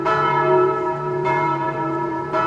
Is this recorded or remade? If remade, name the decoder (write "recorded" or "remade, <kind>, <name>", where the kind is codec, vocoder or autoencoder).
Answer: remade, vocoder, BigVGAN v2